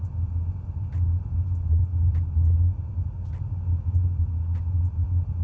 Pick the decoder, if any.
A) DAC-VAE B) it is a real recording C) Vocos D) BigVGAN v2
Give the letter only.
B